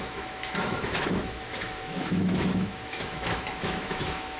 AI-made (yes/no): yes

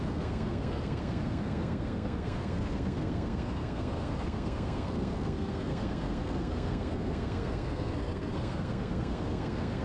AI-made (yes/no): yes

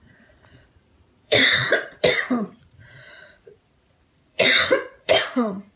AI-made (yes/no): yes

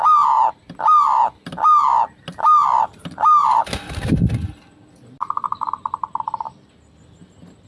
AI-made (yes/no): no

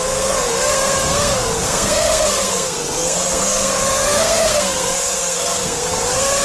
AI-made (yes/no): yes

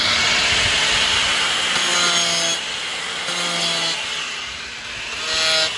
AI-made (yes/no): no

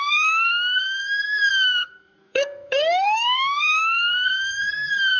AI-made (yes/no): yes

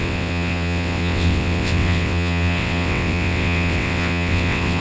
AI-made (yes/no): yes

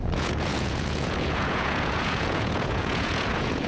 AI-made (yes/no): yes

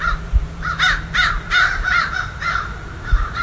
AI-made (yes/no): yes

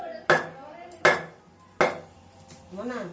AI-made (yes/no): no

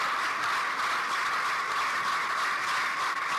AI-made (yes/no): no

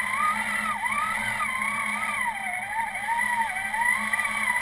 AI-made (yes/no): no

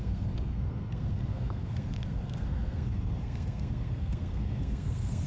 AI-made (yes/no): yes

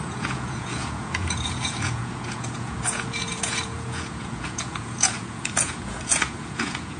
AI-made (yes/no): yes